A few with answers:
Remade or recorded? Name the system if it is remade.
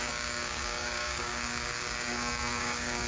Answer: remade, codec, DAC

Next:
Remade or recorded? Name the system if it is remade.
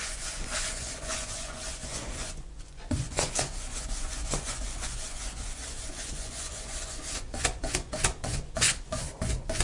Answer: remade, vocoder, Vocos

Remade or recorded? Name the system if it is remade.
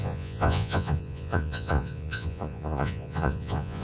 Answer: remade, vocoder, Vocos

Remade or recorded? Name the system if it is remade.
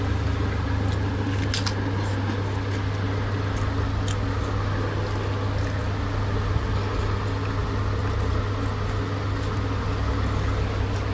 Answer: recorded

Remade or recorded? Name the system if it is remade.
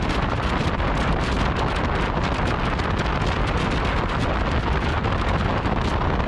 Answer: recorded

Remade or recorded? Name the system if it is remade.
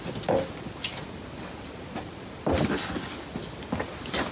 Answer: recorded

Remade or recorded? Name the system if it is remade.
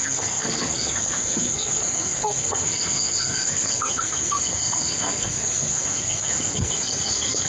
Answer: remade, codec, SNAC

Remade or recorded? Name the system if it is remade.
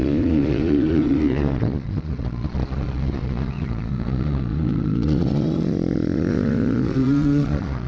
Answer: remade, vocoder, Vocos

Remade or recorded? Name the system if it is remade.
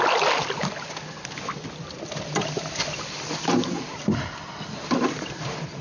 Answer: recorded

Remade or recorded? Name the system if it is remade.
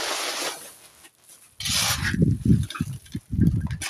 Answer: recorded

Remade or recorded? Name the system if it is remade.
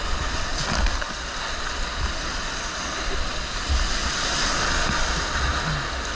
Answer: recorded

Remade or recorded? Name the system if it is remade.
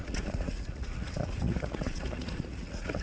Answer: remade, vocoder, Vocos